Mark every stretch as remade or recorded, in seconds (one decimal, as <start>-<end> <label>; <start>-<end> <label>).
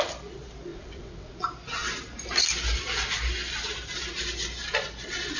0.0-0.7 recorded; 0.7-1.3 remade; 1.3-5.4 recorded